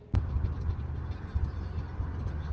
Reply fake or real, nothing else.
real